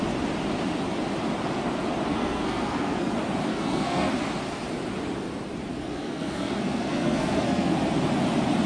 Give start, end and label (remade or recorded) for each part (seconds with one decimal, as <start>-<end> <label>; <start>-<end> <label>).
0.0-2.1 recorded; 2.1-3.1 remade; 3.1-3.5 recorded; 3.5-4.1 remade; 4.1-5.7 recorded; 5.7-7.7 remade; 7.7-8.7 recorded